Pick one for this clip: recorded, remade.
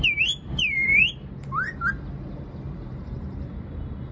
remade